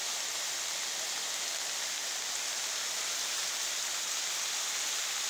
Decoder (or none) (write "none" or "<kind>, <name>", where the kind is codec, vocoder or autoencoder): none